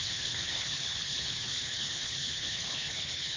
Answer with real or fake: fake